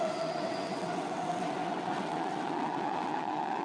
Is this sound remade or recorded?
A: remade